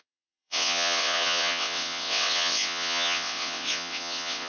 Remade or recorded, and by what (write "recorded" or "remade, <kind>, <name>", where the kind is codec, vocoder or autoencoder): remade, vocoder, WaveNeXt